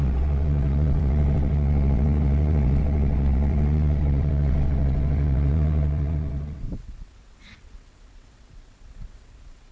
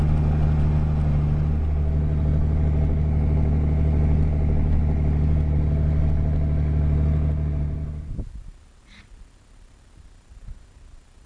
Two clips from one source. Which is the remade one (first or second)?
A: first